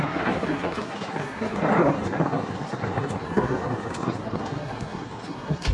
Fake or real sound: fake